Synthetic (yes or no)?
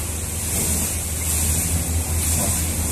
no